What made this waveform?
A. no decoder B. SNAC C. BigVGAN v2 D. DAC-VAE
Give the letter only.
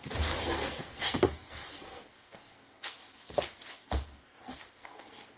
B